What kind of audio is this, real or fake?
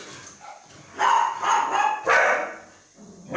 real